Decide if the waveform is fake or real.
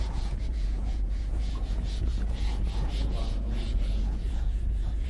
fake